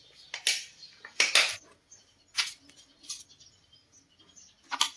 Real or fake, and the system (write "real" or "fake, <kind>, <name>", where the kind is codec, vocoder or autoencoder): real